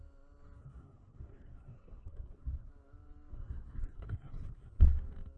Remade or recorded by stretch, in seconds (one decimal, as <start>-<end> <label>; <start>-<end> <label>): 0.0-0.6 recorded; 0.6-2.7 remade; 2.7-3.3 recorded; 3.3-4.7 remade; 4.7-5.4 recorded